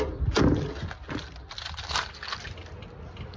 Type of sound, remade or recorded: recorded